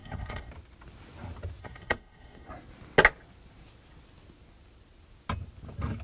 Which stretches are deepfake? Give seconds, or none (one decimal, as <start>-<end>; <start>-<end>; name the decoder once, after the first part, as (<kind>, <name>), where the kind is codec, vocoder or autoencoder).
0.0-0.5 (codec, SNAC); 1.6-2.5